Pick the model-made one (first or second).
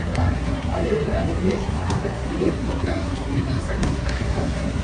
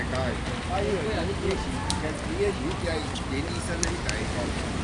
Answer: first